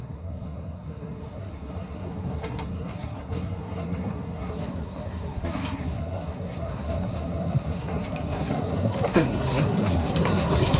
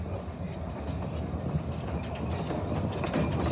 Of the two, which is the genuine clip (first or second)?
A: second